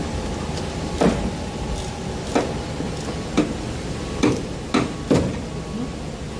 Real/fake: real